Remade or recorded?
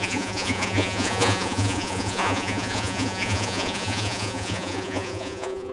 remade